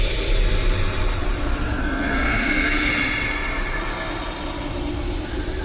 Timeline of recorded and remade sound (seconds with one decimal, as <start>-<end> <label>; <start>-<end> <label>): 0.0-1.8 recorded; 1.8-2.9 remade; 2.9-5.6 recorded